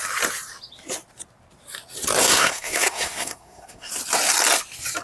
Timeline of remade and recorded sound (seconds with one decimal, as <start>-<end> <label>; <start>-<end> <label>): 0.0-2.2 recorded; 2.2-3.9 remade; 3.9-5.0 recorded